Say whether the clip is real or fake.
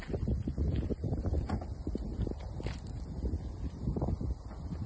real